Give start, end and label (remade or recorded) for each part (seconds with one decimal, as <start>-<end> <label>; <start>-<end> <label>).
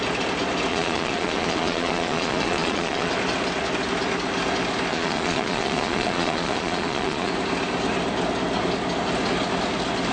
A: 0.0-0.7 recorded; 0.7-3.1 remade; 3.1-4.9 recorded; 4.9-7.3 remade; 7.3-10.1 recorded